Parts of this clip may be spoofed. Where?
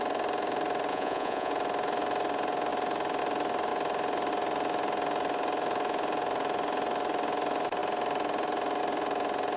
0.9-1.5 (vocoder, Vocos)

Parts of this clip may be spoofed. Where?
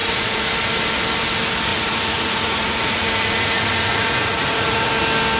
0.0-0.5 (vocoder, Vocos); 1.7-4.9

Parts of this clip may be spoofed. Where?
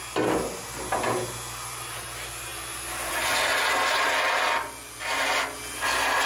none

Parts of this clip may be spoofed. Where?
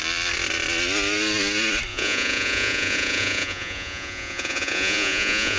1.9-5.6 (vocoder, Vocos)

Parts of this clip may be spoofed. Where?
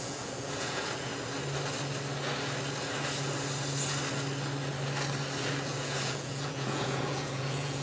0.0-1.1 (vocoder, Vocos); 5.5-7.8